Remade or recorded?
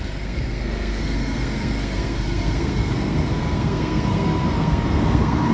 remade